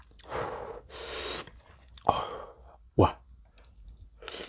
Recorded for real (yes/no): yes